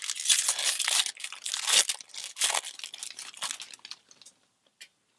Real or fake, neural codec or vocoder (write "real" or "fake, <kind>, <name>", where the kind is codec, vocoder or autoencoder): real